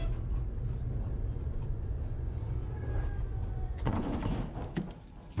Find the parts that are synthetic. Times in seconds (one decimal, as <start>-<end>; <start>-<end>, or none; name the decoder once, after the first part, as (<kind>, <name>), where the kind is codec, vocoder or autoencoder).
1.3-2.4 (vocoder, Vocos); 3.4-4.2